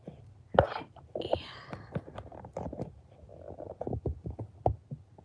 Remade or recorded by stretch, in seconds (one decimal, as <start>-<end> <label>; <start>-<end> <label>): 0.0-5.2 recorded